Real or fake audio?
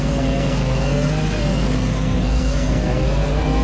fake